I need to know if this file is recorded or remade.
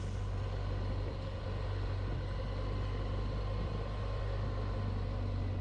recorded